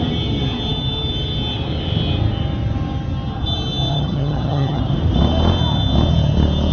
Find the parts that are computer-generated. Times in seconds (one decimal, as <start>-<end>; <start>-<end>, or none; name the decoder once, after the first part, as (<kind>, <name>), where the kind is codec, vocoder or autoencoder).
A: 3.9-4.8 (vocoder, HiFi-GAN)